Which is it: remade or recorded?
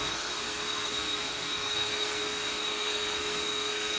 remade